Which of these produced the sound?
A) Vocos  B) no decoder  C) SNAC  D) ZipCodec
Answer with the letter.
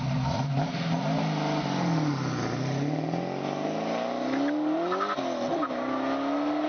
B